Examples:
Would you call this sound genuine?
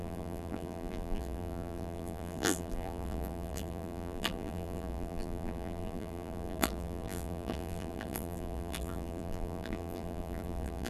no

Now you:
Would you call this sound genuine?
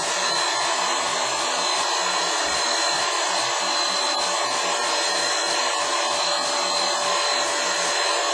yes